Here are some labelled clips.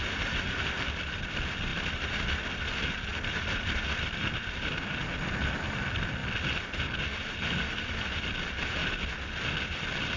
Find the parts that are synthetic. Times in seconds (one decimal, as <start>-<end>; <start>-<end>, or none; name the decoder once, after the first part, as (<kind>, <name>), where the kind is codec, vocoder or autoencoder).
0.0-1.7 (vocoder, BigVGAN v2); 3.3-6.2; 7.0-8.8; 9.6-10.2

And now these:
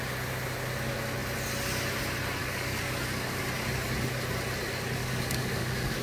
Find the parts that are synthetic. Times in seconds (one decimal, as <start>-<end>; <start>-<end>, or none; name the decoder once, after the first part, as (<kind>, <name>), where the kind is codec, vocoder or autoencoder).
2.4-3.4 (codec, DAC); 5.0-6.0

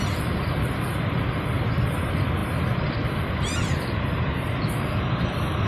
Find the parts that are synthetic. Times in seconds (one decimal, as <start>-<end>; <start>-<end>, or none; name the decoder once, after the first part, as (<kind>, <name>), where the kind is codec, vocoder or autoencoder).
2.4-4.6 (vocoder, BigVGAN v2)